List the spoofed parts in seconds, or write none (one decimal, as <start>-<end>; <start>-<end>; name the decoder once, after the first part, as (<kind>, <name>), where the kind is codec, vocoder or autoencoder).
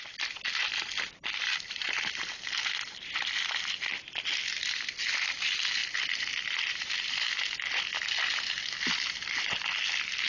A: 1.2-2.1 (vocoder, BigVGAN v2)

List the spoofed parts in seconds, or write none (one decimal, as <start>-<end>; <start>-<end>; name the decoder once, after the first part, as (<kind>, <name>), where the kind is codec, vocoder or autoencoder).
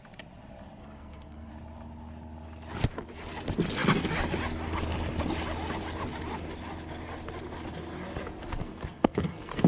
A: 0.8-1.5 (codec, SNAC); 8.6-9.7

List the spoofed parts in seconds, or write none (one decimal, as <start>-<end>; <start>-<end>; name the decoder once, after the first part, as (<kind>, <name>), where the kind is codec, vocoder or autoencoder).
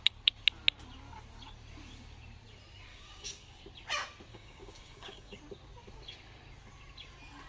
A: 2.9-3.6 (codec, DAC); 4.3-5.4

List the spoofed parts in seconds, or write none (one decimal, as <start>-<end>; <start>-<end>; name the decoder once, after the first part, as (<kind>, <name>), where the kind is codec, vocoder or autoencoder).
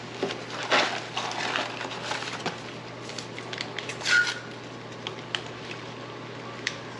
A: none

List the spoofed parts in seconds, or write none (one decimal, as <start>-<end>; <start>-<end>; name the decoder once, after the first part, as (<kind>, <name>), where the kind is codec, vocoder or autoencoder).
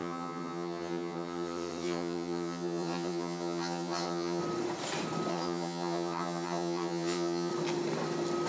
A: 0.0-4.4 (vocoder, HiFi-GAN); 5.3-7.5